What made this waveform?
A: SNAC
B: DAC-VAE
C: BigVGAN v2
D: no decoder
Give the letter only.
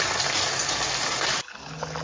D